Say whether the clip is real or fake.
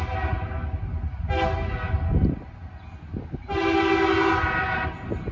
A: real